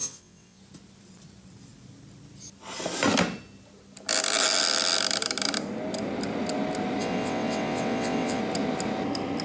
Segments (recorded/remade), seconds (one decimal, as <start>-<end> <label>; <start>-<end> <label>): 0.0-0.6 remade; 0.6-7.0 recorded; 7.0-8.4 remade; 8.4-9.4 recorded